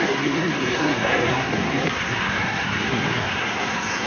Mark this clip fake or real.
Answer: fake